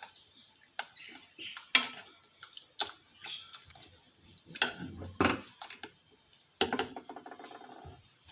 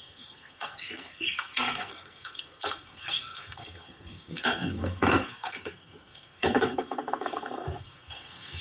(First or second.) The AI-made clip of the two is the second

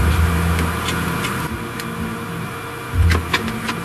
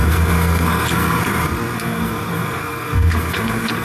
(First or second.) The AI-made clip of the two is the second